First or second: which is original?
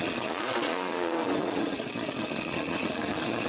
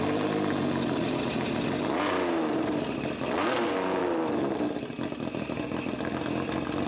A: second